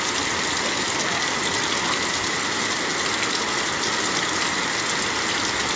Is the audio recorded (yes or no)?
yes